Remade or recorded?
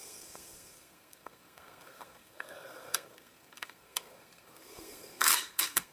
remade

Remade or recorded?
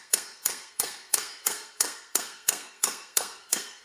remade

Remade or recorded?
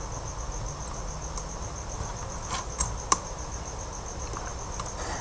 recorded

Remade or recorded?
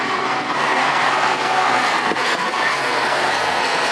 remade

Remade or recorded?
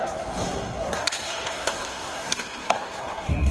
remade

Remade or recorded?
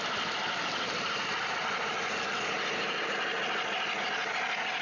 recorded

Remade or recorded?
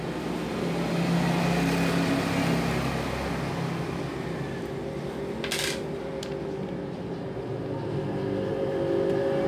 recorded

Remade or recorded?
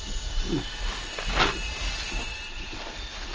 recorded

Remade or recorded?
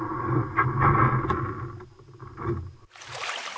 recorded